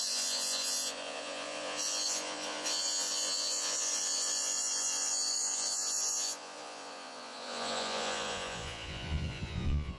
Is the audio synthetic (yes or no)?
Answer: yes